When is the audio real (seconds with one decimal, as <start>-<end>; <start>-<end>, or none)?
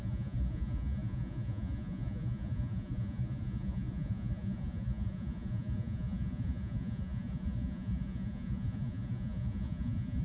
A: none